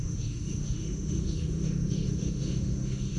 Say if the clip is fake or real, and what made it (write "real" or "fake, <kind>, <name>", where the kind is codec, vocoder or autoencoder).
fake, autoencoder, DAC-VAE